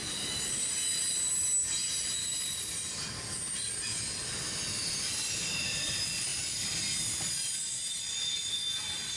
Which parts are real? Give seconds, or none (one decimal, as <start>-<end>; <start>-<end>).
0.0-9.2